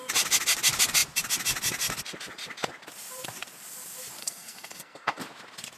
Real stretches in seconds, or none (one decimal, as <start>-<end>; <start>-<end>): 0.0-4.2; 5.2-5.8